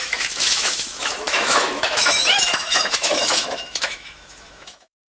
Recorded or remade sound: remade